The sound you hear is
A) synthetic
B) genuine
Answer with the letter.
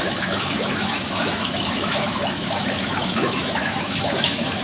A